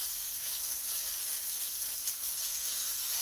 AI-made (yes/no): yes